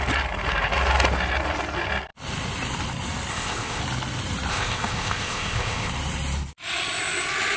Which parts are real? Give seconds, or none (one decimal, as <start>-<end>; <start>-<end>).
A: 0.0-3.3; 3.8-4.5; 5.9-7.6